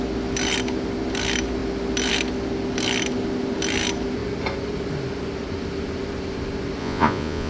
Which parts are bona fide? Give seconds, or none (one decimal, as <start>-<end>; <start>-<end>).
0.0-6.8